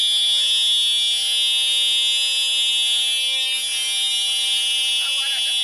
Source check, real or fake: real